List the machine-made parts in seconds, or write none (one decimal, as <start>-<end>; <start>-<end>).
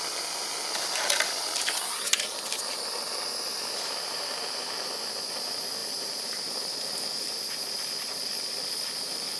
5.8-7.3